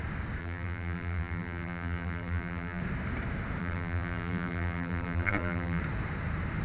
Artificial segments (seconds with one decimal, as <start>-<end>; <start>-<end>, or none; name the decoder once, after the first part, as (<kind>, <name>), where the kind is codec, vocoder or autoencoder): 0.4-2.8 (vocoder, BigVGAN v2); 3.6-5.8